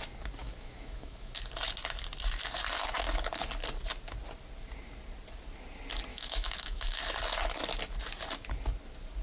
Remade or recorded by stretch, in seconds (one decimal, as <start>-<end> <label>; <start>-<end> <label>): 0.0-0.4 recorded; 0.4-1.4 remade; 1.4-6.1 recorded; 6.1-7.0 remade; 7.0-9.2 recorded